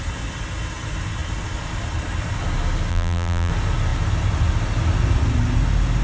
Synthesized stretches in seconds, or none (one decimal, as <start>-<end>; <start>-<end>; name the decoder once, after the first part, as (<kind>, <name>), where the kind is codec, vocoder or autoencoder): 2.9-3.5 (vocoder, BigVGAN v2)